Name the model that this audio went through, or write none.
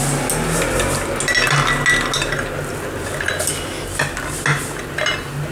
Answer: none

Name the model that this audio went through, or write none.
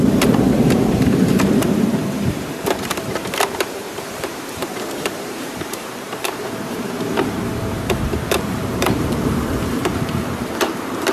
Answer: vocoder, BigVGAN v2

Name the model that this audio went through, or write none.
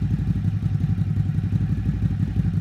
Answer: none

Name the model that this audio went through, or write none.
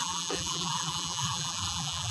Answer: vocoder, BigVGAN v2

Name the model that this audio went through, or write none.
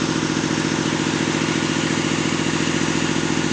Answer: none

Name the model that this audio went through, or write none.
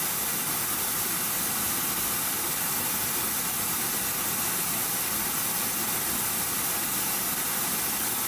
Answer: none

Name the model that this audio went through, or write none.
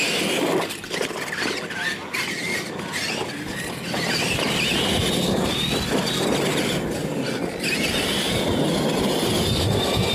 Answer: none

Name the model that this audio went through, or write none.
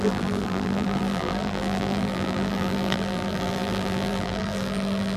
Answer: vocoder, BigVGAN v2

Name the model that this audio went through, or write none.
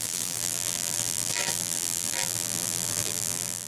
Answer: vocoder, BigVGAN v2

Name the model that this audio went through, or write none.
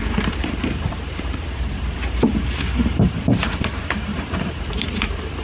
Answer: vocoder, BigVGAN v2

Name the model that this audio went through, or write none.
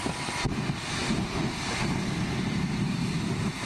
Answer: vocoder, BigVGAN v2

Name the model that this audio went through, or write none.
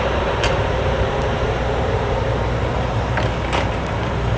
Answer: vocoder, BigVGAN v2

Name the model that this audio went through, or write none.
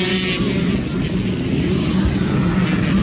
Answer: none